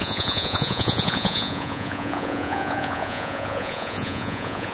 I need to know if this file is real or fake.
fake